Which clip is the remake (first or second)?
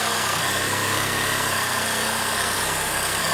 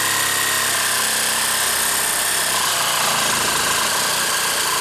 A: first